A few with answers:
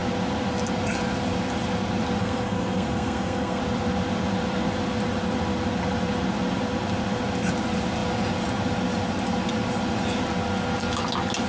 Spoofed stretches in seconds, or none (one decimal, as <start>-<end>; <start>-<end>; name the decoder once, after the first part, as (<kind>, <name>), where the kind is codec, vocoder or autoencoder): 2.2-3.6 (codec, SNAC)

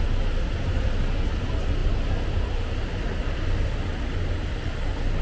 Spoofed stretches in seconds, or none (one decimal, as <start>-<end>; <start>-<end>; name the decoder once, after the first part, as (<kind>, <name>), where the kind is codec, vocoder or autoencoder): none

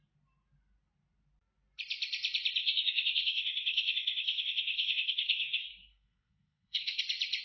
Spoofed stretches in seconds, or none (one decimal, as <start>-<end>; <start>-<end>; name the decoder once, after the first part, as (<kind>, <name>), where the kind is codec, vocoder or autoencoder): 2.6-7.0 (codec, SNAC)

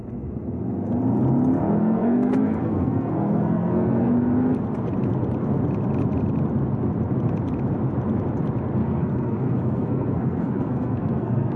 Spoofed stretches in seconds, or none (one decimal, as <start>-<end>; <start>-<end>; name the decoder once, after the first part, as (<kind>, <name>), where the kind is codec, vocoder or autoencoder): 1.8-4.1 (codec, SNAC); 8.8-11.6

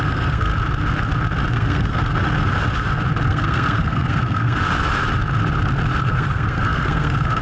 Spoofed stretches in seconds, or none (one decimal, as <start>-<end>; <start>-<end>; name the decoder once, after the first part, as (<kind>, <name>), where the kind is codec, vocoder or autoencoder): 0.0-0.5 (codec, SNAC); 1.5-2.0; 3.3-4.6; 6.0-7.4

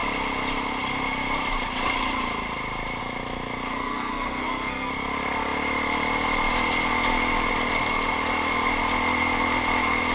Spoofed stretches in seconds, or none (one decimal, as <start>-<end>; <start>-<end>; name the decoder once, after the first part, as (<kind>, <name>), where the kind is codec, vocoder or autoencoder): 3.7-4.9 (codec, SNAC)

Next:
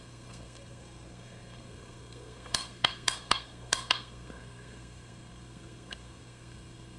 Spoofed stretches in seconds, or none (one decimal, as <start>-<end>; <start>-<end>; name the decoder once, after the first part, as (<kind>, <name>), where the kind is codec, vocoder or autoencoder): 0.0-7.0 (codec, SNAC)

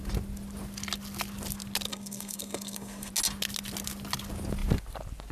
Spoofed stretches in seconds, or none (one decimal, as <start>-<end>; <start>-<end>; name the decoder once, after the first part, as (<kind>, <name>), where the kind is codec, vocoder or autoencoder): 1.9-3.1 (codec, SNAC)